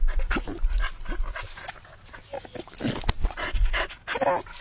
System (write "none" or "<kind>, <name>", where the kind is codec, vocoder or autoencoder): none